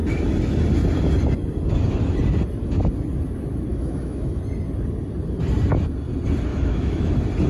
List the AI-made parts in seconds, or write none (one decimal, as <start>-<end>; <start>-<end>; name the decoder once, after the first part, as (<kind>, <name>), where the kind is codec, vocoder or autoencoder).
3.7-4.4 (autoencoder, DAC-VAE); 6.5-7.1